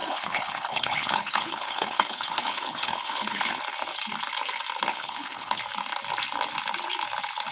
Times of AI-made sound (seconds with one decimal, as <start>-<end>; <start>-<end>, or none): 0.0-3.6; 4.9-5.6